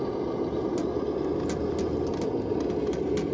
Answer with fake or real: real